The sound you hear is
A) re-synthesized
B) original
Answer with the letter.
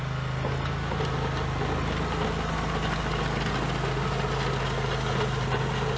B